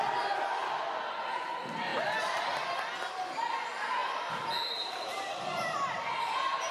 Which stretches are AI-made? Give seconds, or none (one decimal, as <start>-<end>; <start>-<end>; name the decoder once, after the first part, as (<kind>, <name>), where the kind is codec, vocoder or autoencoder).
1.9-2.5 (vocoder, BigVGAN v2); 4.0-6.0